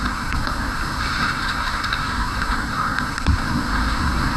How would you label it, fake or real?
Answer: fake